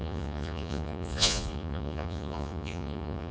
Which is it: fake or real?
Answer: fake